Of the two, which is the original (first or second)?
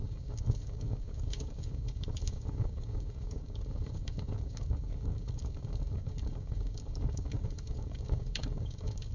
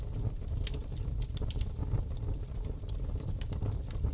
second